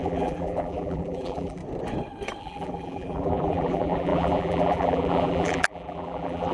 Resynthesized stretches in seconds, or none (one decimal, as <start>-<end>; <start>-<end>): 0.0-1.6; 2.4-6.5